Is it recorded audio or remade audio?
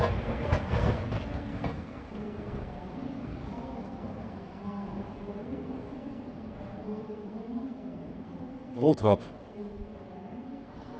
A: remade